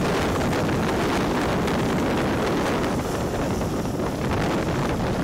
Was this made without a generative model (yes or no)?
yes